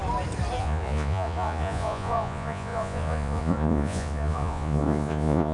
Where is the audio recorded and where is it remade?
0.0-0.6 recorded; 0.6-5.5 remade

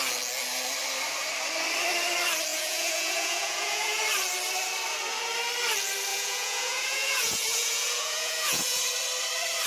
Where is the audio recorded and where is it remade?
0.0-2.5 recorded; 2.5-4.0 remade; 4.0-6.1 recorded; 6.1-8.8 remade; 8.8-9.7 recorded